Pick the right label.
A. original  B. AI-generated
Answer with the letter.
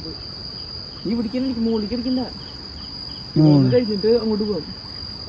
A